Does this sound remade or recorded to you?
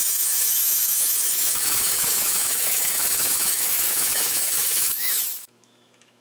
remade